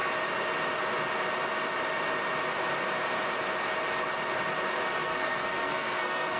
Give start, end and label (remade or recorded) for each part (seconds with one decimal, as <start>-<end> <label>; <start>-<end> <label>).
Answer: 0.0-4.9 recorded; 4.9-6.4 remade